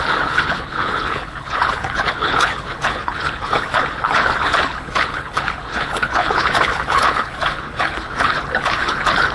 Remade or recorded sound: remade